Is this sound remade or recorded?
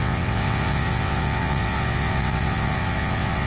remade